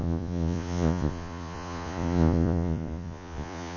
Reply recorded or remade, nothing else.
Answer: remade